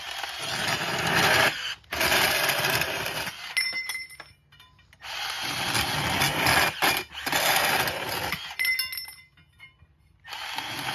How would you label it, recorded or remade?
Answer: recorded